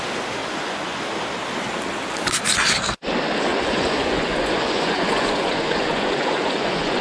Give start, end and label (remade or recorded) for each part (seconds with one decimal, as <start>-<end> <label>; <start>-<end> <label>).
0.0-0.4 recorded; 0.4-1.0 remade; 1.0-3.5 recorded; 3.5-7.0 remade